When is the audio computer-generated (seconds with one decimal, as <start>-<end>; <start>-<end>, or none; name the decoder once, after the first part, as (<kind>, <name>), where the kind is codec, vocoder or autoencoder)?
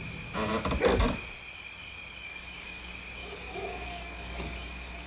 2.2-2.8 (codec, DAC); 3.2-5.1